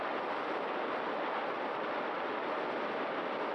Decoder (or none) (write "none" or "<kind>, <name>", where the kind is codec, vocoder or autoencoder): none